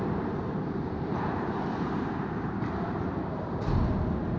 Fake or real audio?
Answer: fake